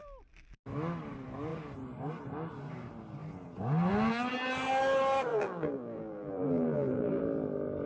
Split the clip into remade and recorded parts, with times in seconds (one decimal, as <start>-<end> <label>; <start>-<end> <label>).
0.0-5.3 recorded; 5.3-7.2 remade; 7.2-7.9 recorded